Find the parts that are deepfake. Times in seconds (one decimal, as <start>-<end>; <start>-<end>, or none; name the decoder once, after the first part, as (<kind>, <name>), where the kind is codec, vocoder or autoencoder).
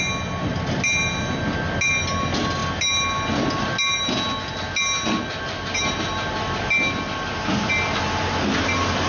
none